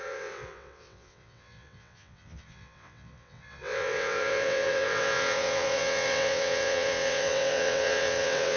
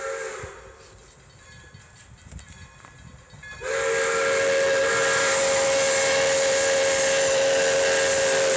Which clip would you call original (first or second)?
second